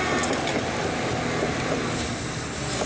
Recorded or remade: recorded